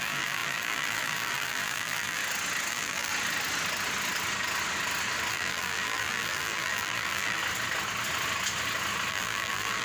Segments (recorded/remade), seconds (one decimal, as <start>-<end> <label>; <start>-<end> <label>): 0.0-2.2 remade; 2.2-2.7 recorded; 2.7-3.1 remade; 3.1-5.3 recorded; 5.3-7.4 remade; 7.4-9.1 recorded; 9.1-9.8 remade